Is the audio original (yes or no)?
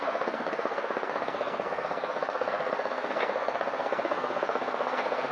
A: no